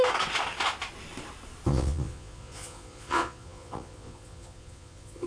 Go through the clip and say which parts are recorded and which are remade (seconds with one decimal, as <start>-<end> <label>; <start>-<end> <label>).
0.0-1.7 recorded; 1.7-5.3 remade